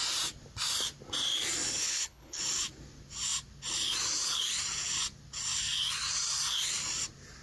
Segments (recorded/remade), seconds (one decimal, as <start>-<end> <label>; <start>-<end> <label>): 0.0-1.8 recorded; 1.8-2.4 remade; 2.4-7.4 recorded